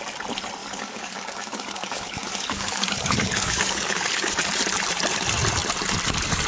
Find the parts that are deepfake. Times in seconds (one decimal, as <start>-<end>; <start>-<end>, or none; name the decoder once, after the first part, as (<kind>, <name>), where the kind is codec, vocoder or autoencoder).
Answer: 0.6-4.5 (codec, DAC)